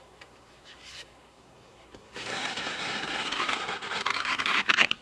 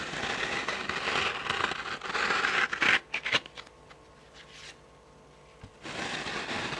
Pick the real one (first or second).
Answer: second